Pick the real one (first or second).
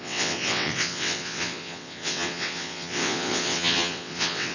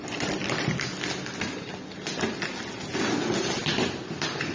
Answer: second